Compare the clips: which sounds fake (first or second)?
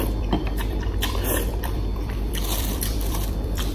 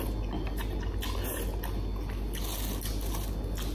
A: first